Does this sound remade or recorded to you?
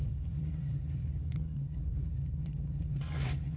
remade